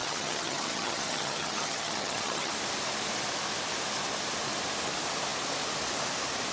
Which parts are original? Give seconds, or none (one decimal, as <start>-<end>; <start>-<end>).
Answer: 2.5-6.5